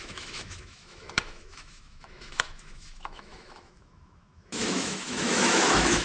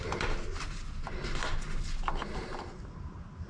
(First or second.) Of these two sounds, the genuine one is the second